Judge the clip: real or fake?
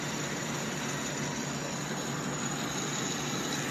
real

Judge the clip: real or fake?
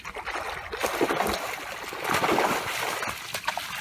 real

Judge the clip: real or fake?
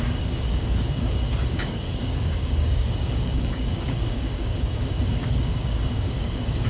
fake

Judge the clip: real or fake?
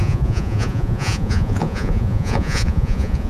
fake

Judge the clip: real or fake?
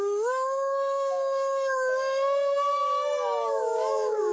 fake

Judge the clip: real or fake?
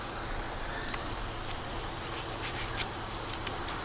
real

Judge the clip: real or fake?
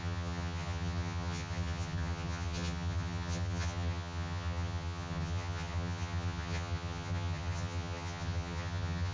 fake